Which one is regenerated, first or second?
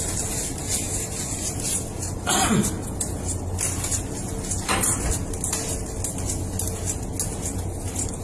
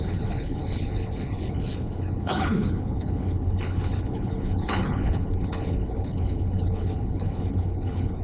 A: second